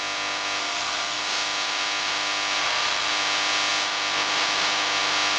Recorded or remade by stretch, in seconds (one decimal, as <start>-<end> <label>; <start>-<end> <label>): 0.0-0.6 recorded; 0.6-1.2 remade; 1.2-2.6 recorded; 2.6-3.1 remade; 3.1-5.4 recorded